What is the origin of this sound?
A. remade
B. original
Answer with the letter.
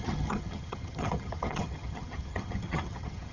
A